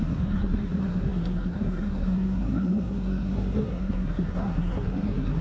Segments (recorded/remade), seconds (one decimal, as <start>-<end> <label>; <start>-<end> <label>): 0.0-5.4 remade